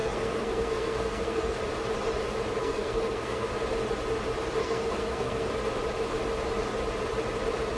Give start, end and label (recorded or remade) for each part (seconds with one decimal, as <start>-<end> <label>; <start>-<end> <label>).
0.0-1.6 remade; 1.6-2.6 recorded; 2.6-3.5 remade; 3.5-4.6 recorded; 4.6-5.5 remade; 5.5-7.8 recorded